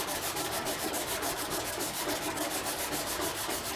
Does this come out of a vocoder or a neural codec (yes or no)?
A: yes